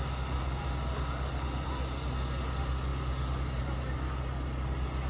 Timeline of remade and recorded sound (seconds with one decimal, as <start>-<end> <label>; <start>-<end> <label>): 0.0-5.1 recorded